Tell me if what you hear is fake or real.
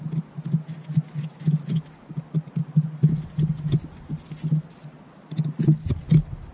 real